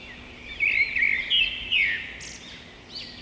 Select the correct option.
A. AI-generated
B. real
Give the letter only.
B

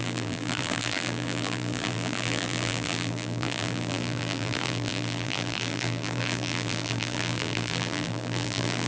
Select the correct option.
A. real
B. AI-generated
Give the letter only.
B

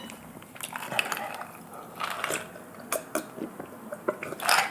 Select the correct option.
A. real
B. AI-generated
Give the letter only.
A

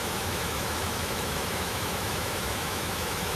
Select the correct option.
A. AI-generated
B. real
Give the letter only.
A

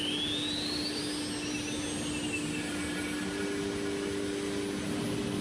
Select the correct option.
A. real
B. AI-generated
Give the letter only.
A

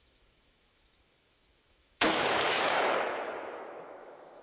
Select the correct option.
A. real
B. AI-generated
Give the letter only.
B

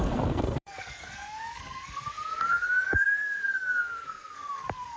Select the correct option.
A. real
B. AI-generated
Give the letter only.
B